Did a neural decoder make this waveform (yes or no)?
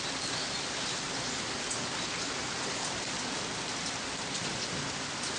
no